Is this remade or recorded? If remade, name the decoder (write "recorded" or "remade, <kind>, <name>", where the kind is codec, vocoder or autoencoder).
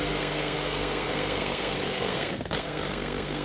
remade, codec, SNAC